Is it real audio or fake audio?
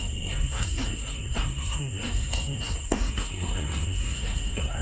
fake